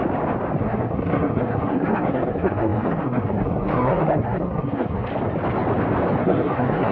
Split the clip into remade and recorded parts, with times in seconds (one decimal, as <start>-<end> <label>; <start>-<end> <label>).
0.0-0.6 recorded; 0.6-5.1 remade; 5.1-6.2 recorded; 6.2-6.9 remade